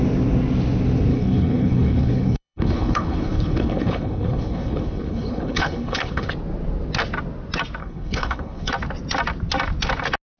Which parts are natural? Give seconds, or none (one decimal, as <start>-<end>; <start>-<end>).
0.0-1.1; 6.3-7.8; 8.7-10.4